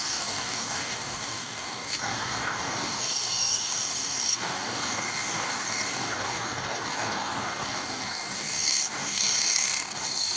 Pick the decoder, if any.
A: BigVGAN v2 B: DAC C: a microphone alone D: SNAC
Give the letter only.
B